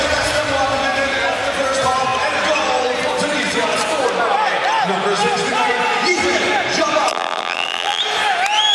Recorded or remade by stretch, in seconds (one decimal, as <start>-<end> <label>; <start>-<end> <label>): 0.0-7.1 recorded; 7.1-8.0 remade; 8.0-8.7 recorded